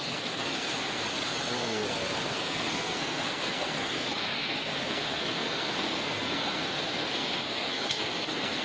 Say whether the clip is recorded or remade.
remade